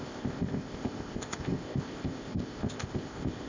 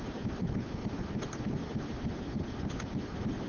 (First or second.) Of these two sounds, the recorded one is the second